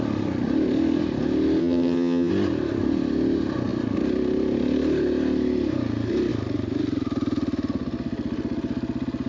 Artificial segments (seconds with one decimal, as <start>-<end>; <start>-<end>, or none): 1.6-2.3